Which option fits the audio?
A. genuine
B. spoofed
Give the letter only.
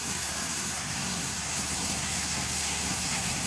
B